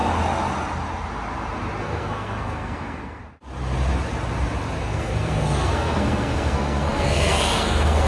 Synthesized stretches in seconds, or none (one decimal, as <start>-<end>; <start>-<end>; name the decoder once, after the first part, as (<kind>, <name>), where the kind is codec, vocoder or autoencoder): 1.8-3.2 (codec, SNAC); 4.8-8.1